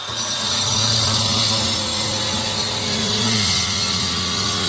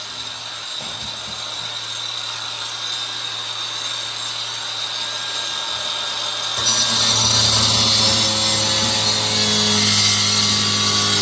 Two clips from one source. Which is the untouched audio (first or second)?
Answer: second